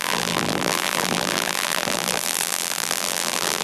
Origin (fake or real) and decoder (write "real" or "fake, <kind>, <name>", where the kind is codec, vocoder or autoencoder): fake, vocoder, BigVGAN v2